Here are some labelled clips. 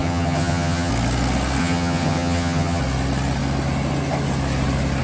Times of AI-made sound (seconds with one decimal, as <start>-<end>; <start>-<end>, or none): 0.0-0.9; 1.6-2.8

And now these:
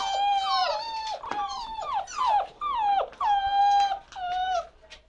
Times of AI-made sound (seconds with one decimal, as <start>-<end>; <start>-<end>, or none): none

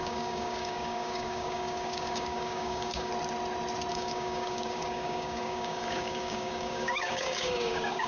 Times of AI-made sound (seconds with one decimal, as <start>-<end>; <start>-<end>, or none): 0.0-3.1; 3.9-8.1